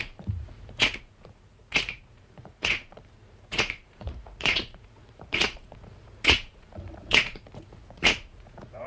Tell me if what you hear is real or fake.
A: fake